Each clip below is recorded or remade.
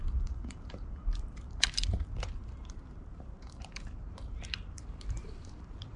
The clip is remade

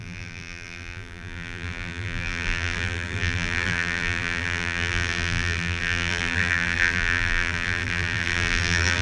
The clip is remade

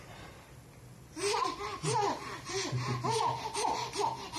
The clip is recorded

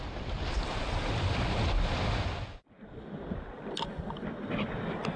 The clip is recorded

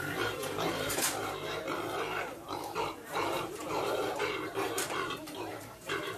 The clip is remade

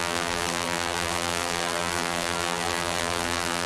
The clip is remade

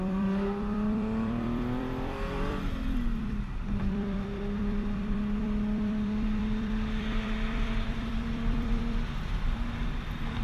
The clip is remade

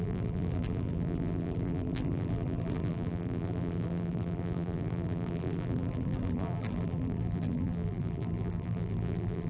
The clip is remade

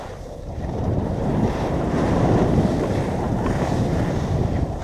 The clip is remade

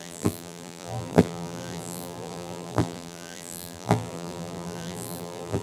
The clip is remade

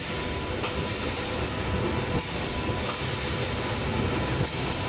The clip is recorded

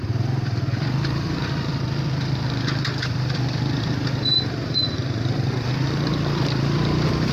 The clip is remade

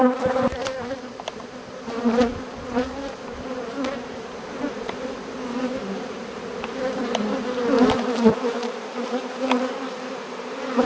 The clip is remade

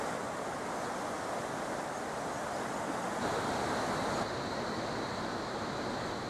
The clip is recorded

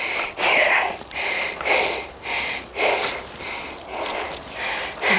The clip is remade